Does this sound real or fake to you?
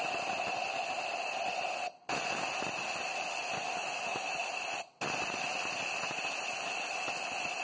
real